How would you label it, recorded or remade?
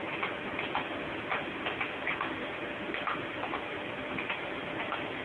recorded